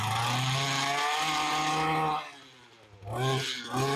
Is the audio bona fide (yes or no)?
yes